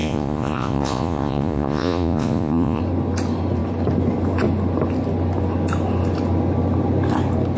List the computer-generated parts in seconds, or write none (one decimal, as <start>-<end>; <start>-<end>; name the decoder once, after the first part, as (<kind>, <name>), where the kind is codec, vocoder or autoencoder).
0.0-2.8 (vocoder, Vocos)